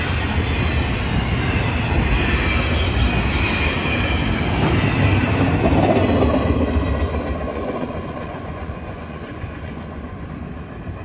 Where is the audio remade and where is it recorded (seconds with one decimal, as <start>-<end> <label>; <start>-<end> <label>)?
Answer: 0.0-7.5 recorded; 7.5-10.3 remade; 10.3-11.0 recorded